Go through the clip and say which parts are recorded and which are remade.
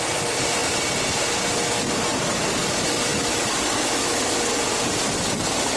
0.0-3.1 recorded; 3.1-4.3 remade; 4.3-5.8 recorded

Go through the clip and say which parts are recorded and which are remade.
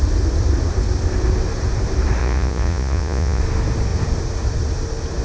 0.0-2.2 recorded; 2.2-3.4 remade; 3.4-5.2 recorded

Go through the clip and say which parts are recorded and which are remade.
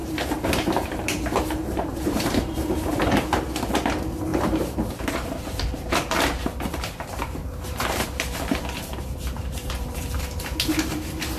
0.0-2.6 remade; 2.6-4.3 recorded; 4.3-5.9 remade; 5.9-7.4 recorded; 7.4-10.2 remade; 10.2-11.4 recorded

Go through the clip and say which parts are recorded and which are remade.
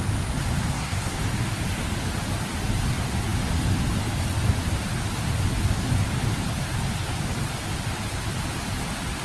0.0-0.7 recorded; 0.7-1.2 remade; 1.2-9.2 recorded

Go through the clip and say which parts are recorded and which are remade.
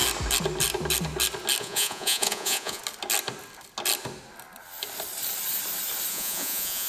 0.0-1.6 recorded; 1.6-2.8 remade; 2.8-6.1 recorded; 6.1-6.9 remade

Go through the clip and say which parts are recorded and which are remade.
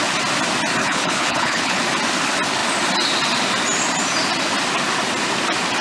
0.0-0.8 recorded; 0.8-1.8 remade; 1.8-5.8 recorded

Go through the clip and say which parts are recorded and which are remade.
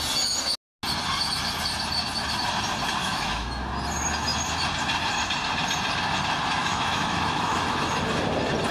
0.0-3.0 recorded; 3.0-3.6 remade; 3.6-6.6 recorded; 6.6-7.6 remade; 7.6-8.7 recorded